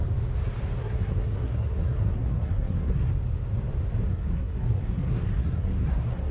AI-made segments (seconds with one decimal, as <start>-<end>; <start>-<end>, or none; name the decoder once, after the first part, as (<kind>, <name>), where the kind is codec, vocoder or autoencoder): 0.8-3.1 (codec, SNAC); 4.1-6.3